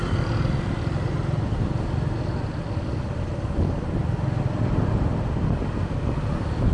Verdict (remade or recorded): recorded